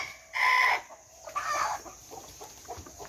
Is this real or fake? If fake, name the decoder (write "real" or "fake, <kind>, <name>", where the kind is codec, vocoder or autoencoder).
real